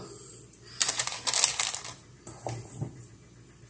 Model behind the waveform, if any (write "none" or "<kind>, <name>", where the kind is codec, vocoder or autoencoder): none